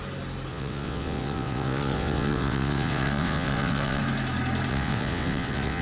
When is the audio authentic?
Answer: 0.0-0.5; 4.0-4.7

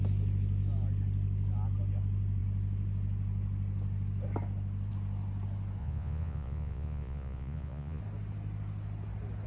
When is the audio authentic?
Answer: 0.0-5.8; 8.0-9.5

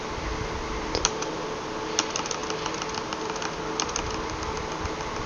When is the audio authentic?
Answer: 0.0-5.3

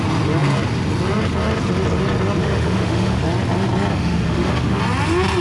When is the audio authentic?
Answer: 0.0-2.4; 3.2-3.9; 4.8-5.4

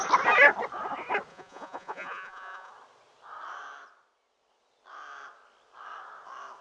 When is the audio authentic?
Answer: 0.0-1.3; 2.7-6.6

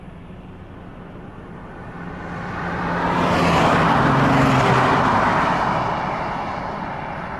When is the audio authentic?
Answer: 0.0-7.4

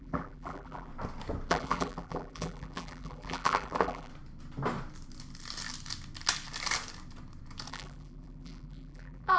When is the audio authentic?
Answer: 0.9-1.5; 4.1-7.7

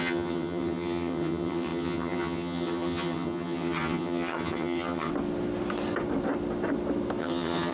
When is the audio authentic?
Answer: 5.1-7.2